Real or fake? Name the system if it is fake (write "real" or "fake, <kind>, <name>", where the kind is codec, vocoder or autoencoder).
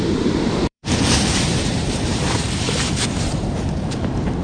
fake, vocoder, BigVGAN v2